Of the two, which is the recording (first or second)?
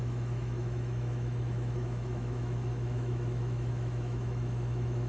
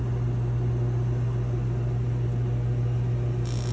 second